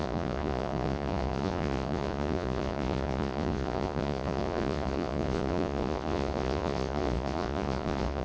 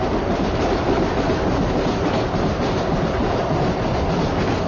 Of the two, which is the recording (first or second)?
second